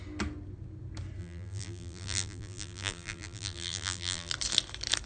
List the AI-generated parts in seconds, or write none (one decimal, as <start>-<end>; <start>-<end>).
1.2-4.3